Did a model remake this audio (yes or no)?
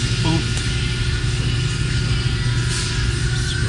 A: no